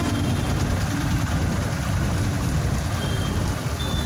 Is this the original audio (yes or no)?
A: yes